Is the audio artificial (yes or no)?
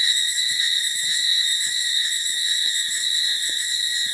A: yes